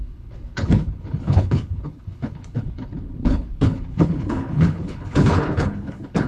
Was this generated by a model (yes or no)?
yes